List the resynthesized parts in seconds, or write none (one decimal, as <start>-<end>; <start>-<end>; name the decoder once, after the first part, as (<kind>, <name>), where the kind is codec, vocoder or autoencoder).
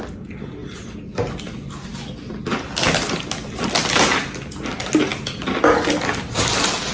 none